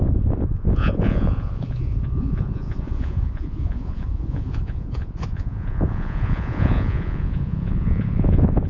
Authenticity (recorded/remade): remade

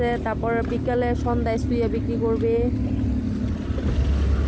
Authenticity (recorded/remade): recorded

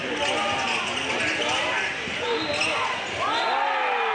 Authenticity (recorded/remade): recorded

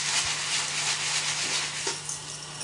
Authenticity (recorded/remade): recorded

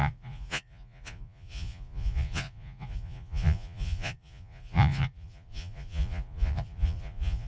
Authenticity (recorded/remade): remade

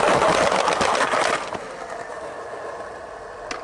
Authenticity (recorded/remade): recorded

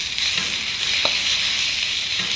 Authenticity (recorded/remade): recorded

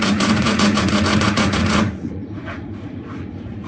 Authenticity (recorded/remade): remade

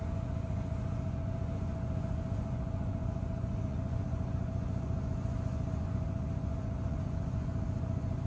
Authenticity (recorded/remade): remade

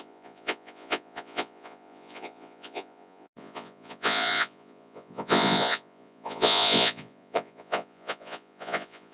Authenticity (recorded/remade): remade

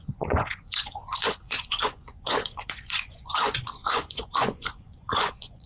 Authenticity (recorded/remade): remade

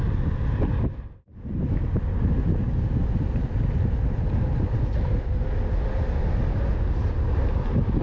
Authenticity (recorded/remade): recorded